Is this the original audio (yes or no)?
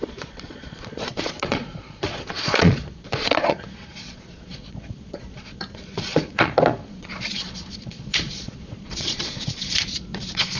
no